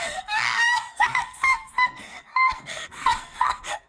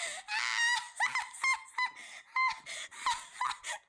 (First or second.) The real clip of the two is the second